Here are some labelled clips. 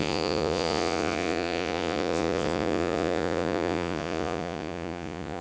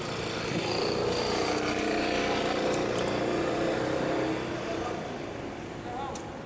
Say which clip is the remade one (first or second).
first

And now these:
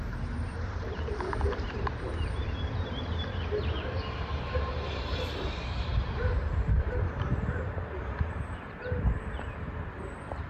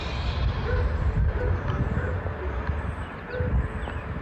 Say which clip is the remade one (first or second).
first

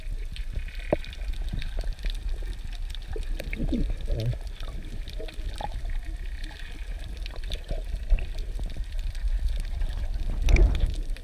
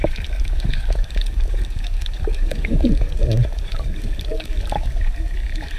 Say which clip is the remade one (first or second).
second